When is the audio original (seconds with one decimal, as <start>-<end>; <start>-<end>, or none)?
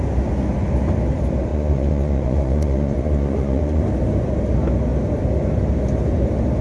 0.0-1.5; 3.8-6.6